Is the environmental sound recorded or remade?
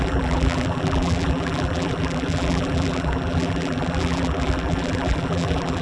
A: remade